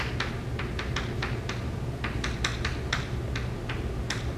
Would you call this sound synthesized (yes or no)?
no